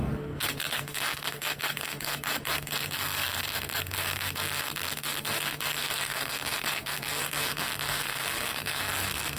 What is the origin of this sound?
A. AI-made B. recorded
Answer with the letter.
A